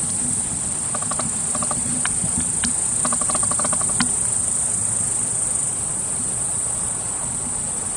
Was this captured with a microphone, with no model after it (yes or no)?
yes